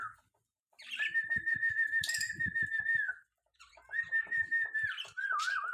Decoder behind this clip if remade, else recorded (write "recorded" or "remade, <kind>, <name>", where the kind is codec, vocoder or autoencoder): remade, vocoder, BigVGAN v2